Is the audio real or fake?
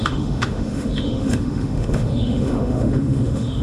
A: fake